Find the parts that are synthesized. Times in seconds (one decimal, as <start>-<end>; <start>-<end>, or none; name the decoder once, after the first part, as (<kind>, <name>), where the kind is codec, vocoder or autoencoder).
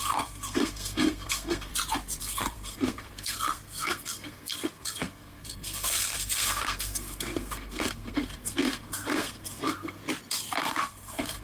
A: 0.0-1.7 (codec, SNAC); 2.2-10.0; 10.6-11.4